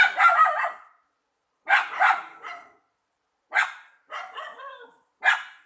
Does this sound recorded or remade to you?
recorded